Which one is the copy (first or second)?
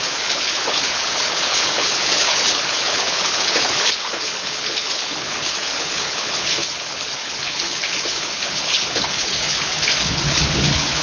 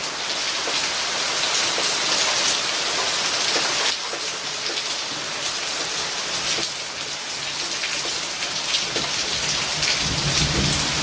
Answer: first